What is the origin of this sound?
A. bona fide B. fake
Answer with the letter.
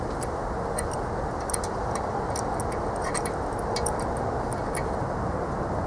A